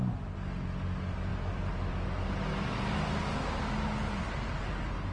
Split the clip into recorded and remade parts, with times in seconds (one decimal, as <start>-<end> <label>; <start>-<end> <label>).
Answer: 0.0-5.1 recorded